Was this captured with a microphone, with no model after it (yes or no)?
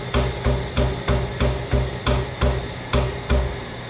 yes